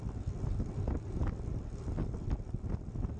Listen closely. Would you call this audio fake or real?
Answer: real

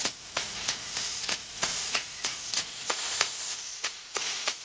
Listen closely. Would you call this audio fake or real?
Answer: fake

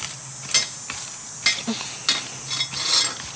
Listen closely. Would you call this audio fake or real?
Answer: real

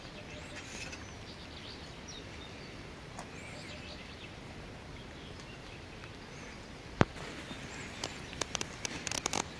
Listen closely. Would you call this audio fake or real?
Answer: fake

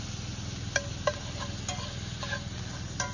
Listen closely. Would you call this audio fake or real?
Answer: real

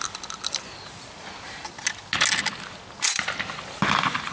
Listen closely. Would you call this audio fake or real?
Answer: real